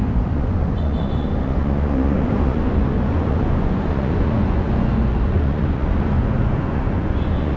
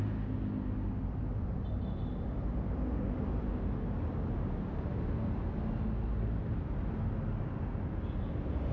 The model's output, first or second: first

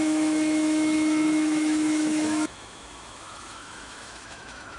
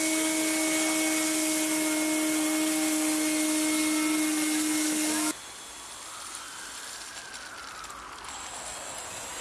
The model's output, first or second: first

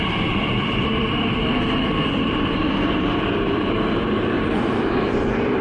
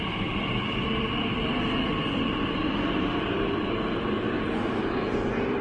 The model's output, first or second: first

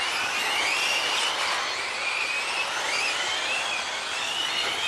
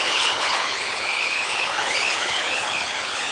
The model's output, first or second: second